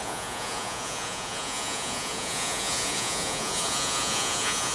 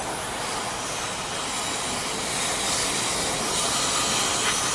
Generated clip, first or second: first